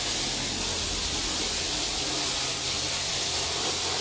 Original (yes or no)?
yes